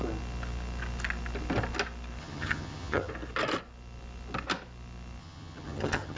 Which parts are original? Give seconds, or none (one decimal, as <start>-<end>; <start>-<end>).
0.0-2.2; 3.1-5.2